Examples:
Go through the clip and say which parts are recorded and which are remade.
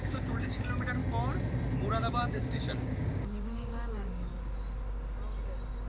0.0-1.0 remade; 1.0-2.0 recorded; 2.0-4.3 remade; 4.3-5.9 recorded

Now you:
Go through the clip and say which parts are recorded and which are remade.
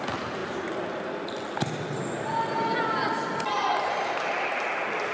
0.0-5.1 recorded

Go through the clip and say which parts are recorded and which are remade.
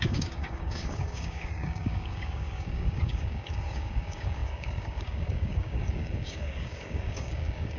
0.0-7.8 remade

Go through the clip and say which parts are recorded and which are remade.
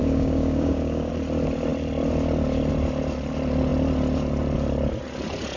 0.0-1.1 remade; 1.1-5.6 recorded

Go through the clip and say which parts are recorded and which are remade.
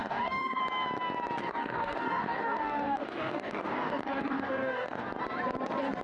0.0-0.6 remade; 0.6-1.4 recorded; 1.4-5.0 remade; 5.0-6.0 recorded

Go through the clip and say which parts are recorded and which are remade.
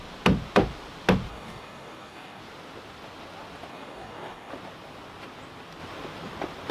0.0-1.3 recorded; 1.3-2.4 remade; 2.4-3.7 recorded; 3.7-4.5 remade; 4.5-6.7 recorded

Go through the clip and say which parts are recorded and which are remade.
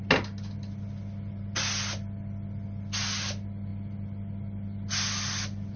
0.0-5.8 recorded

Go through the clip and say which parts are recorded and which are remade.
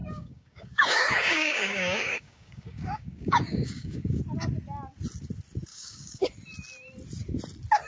0.0-4.2 remade; 4.2-5.7 recorded; 5.7-6.3 remade; 6.3-7.9 recorded